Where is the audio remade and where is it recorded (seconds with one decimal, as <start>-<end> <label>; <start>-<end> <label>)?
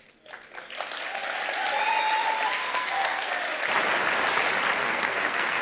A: 0.0-2.6 recorded; 2.6-3.3 remade; 3.3-4.8 recorded; 4.8-5.6 remade